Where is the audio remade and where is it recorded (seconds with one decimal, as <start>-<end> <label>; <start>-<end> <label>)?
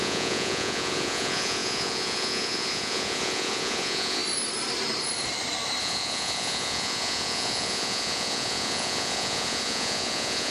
0.0-4.2 remade; 4.2-5.8 recorded; 5.8-10.5 remade